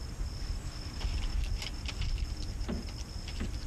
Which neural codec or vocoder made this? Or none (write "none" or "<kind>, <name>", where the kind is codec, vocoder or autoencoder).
none